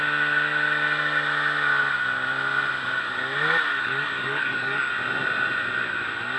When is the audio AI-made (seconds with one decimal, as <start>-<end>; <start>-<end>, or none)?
3.7-4.9

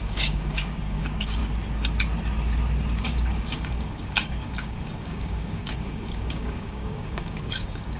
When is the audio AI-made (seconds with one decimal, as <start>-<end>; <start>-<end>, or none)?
0.0-1.4; 3.0-8.0

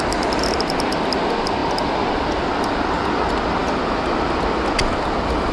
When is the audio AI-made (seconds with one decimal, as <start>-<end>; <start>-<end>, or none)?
none